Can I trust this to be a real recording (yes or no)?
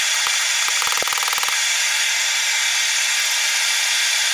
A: yes